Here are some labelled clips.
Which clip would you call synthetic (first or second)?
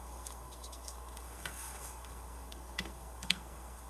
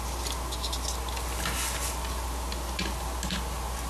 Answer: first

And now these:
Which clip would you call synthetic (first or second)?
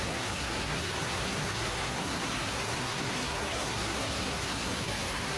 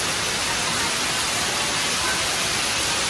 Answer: first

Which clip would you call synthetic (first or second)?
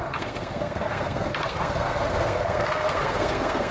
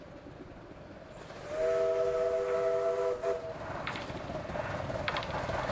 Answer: first